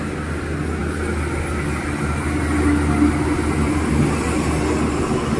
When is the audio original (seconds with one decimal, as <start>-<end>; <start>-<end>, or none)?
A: 0.0-5.4